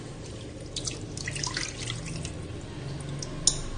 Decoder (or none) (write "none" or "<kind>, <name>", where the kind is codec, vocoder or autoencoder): none